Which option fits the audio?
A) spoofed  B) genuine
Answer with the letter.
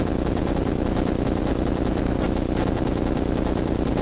B